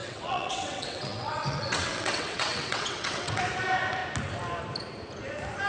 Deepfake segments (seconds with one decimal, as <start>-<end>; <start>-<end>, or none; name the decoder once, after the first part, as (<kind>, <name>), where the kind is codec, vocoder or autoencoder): 0.0-3.4 (vocoder, WaveNeXt)

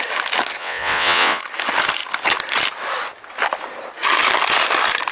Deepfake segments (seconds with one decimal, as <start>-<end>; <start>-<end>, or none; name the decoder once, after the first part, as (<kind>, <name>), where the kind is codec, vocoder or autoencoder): 0.6-1.4 (vocoder, WaveNeXt)

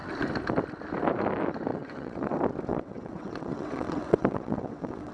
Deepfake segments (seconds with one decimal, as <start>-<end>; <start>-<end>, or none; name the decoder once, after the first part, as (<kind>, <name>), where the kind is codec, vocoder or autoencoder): 1.7-2.3 (vocoder, WaveNeXt); 2.7-5.1

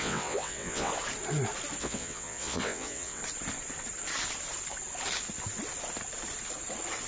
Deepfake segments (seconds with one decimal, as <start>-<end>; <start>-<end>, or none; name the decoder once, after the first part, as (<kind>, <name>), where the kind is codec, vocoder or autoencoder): 0.0-0.9 (vocoder, WaveNeXt); 1.8-3.2

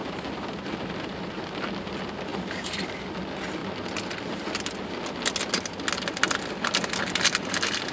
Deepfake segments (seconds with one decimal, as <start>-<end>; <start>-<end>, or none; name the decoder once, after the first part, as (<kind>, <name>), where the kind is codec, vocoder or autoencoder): none

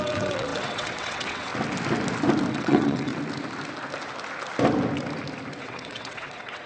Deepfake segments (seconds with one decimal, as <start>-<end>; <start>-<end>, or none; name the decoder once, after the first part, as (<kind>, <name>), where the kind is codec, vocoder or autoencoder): 0.0-1.5 (vocoder, WaveNeXt); 2.5-3.1; 5.6-6.7

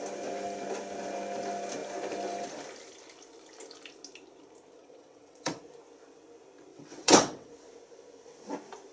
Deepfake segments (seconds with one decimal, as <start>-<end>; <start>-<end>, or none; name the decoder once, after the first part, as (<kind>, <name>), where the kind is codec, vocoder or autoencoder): 4.8-5.6 (vocoder, WaveNeXt); 6.7-7.5